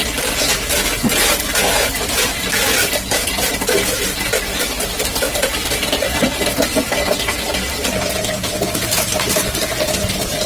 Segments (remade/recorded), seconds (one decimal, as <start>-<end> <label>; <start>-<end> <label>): 0.0-1.2 recorded; 1.2-3.5 remade; 3.5-5.0 recorded; 5.0-10.5 remade